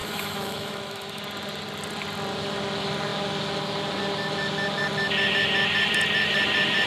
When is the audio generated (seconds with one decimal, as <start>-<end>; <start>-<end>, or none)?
0.0-1.2